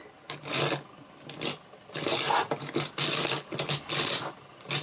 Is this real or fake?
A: real